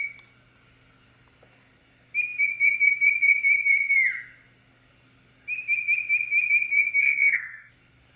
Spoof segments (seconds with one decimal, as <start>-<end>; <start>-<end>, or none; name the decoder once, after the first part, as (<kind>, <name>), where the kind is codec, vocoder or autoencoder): 7.0-7.7 (codec, SNAC)